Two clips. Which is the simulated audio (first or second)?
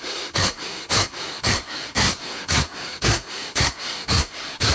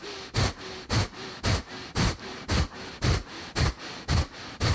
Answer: first